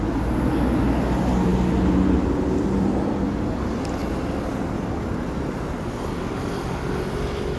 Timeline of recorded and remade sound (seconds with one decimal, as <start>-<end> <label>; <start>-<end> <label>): 0.0-7.6 recorded